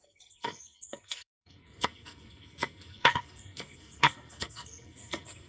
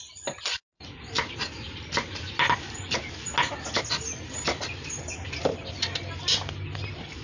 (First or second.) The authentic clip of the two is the second